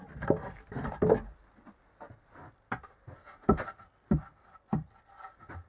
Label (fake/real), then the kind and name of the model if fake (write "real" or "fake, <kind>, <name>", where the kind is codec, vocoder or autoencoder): real